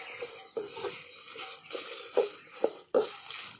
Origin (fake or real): real